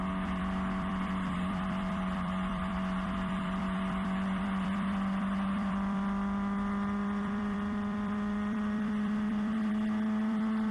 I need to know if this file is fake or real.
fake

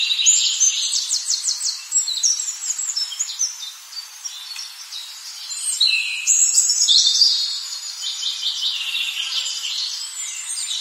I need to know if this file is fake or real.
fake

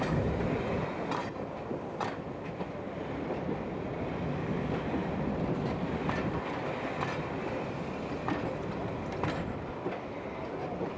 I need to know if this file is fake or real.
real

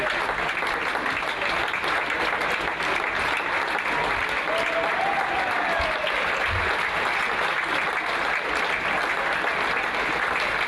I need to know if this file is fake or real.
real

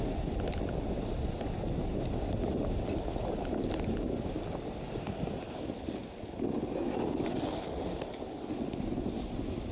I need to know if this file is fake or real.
real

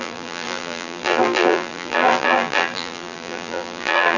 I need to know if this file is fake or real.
fake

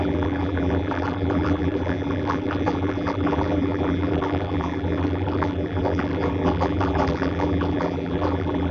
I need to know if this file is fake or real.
fake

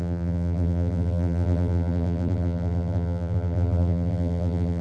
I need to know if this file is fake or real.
fake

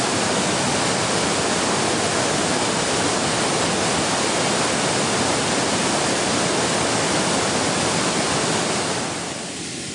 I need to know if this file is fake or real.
real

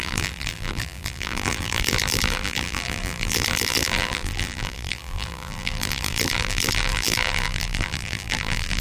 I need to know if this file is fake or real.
fake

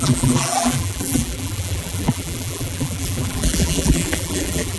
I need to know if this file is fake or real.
fake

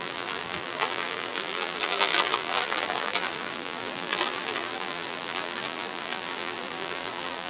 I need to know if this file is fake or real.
fake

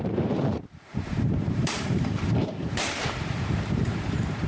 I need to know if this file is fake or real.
fake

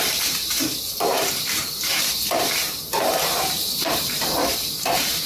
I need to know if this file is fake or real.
fake